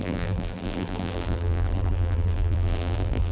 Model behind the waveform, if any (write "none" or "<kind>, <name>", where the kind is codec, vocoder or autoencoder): vocoder, BigVGAN v2